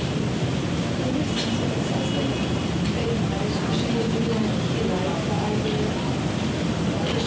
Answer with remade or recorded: recorded